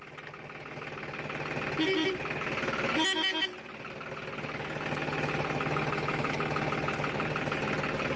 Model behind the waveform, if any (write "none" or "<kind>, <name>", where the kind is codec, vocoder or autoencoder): none